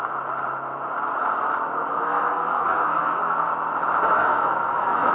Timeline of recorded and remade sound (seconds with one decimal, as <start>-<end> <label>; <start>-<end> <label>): 0.0-1.9 recorded; 1.9-3.5 remade; 3.5-4.0 recorded; 4.0-5.1 remade